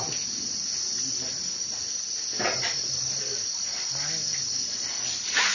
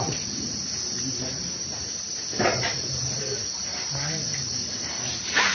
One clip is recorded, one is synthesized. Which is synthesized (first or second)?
second